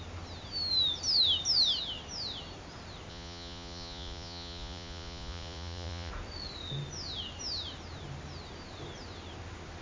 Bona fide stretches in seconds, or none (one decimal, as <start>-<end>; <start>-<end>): 0.0-3.1; 6.1-9.8